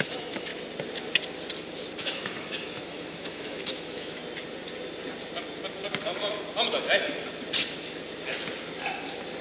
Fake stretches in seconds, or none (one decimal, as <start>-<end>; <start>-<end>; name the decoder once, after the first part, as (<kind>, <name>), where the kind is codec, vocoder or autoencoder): 0.0-0.5 (autoencoder, DAC-VAE); 2.0-4.2